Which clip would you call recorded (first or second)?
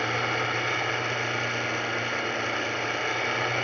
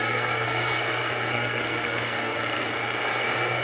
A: first